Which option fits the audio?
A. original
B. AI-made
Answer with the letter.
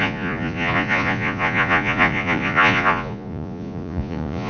B